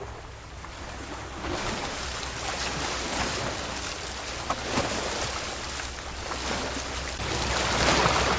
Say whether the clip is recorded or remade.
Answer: recorded